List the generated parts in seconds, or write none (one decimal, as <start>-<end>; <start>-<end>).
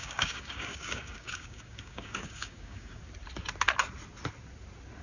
0.0-3.0